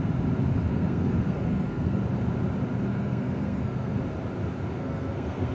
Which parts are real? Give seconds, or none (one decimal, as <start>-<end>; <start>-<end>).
0.0-0.7; 2.0-2.9; 4.0-4.8